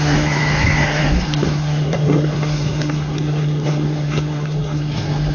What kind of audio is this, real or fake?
fake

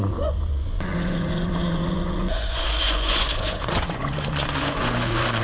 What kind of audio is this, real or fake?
fake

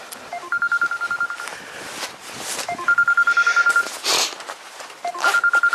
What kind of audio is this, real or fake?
real